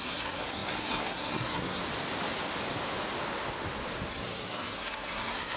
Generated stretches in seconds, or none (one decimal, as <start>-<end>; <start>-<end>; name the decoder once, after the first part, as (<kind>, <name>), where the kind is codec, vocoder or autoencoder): 0.0-1.8 (codec, SNAC); 4.1-5.6